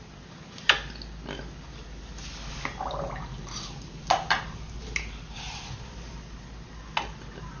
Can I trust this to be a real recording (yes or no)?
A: yes